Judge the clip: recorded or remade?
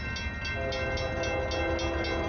recorded